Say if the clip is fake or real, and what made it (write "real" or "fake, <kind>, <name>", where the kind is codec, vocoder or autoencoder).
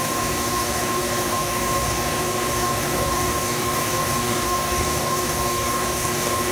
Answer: fake, codec, DAC